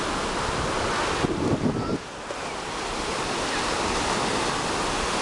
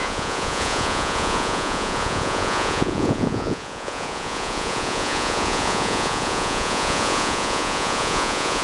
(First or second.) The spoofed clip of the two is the second